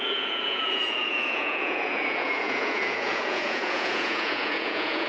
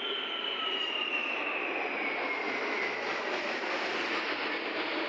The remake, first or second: first